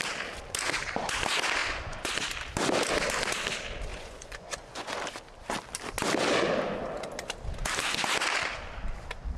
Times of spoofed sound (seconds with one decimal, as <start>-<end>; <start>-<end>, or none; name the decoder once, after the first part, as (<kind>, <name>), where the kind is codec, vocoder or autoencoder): 1.6-2.1 (vocoder, Vocos); 3.9-5.0